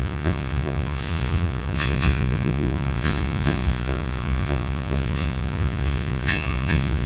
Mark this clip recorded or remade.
remade